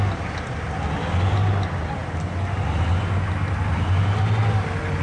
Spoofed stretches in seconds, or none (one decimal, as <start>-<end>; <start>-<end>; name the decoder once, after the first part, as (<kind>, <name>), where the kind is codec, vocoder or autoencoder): none